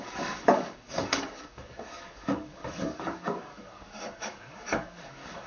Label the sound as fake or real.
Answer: fake